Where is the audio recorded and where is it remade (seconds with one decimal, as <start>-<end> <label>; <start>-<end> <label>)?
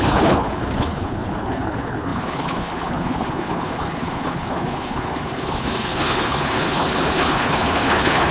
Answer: 0.0-8.3 remade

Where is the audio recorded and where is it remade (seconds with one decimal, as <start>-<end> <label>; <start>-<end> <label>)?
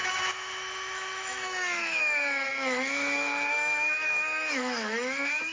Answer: 0.0-5.5 remade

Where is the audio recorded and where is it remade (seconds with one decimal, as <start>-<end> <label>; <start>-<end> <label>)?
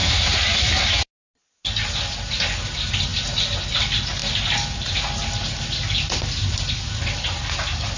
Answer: 0.0-8.0 recorded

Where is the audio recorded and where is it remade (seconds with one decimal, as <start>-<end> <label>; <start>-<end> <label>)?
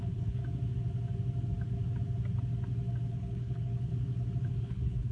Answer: 0.0-0.4 remade; 0.4-3.1 recorded; 3.1-3.9 remade; 3.9-4.6 recorded; 4.6-5.1 remade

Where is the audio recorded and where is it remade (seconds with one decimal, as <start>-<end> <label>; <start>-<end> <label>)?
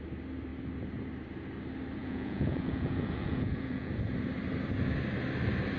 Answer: 0.0-2.0 recorded; 2.0-3.9 remade; 3.9-5.8 recorded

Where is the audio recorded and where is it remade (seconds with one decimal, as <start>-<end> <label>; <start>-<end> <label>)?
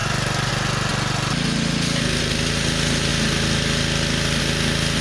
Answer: 0.0-5.0 recorded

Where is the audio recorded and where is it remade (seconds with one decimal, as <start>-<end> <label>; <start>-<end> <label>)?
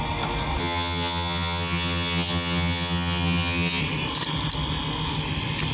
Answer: 0.0-0.6 recorded; 0.6-3.8 remade; 3.8-5.7 recorded